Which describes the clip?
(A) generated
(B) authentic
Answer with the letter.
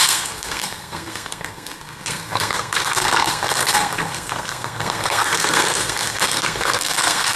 A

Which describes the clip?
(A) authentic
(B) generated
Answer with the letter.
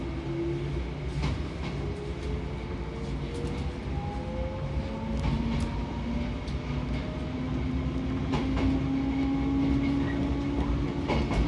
A